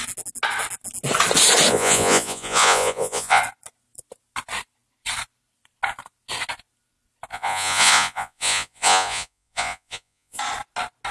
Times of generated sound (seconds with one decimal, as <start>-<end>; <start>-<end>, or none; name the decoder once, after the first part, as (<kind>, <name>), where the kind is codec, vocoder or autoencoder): 1.7-3.4 (vocoder, Vocos); 7.3-10.4